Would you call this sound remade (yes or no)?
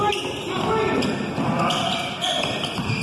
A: no